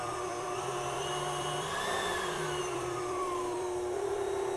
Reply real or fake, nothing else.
fake